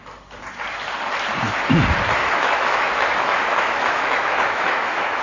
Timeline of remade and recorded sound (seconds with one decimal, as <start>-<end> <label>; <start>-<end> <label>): 0.0-2.2 recorded; 2.2-5.2 remade